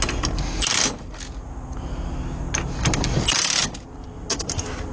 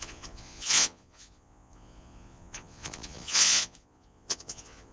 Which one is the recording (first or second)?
first